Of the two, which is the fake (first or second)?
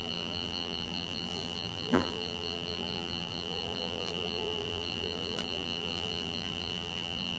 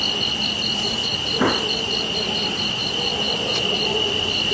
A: first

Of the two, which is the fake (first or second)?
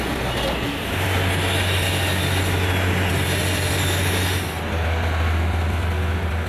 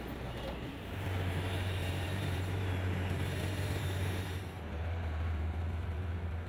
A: second